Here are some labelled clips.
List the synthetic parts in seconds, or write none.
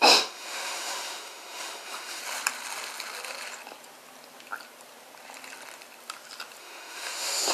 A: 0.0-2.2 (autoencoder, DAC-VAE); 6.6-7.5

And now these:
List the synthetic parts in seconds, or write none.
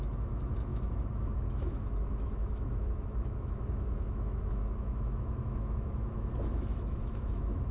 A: 0.0-7.7 (autoencoder, DAC-VAE)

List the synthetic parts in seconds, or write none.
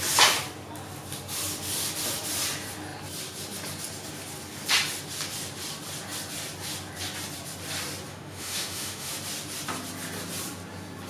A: 8.1-9.1 (autoencoder, DAC-VAE)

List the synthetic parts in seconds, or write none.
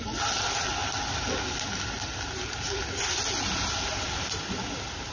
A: none